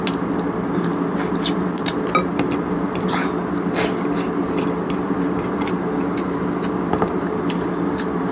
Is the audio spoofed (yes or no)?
no